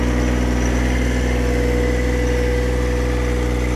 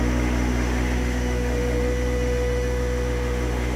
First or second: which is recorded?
first